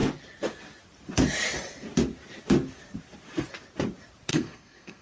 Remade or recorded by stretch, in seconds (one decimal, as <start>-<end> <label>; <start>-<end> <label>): 0.0-4.3 recorded; 4.3-5.0 remade